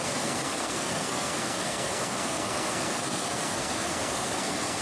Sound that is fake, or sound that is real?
fake